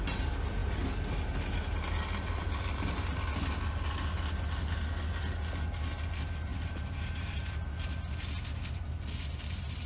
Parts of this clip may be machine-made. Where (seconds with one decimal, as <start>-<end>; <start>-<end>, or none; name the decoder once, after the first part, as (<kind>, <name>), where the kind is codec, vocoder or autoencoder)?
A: 6.5-7.7 (vocoder, BigVGAN v2)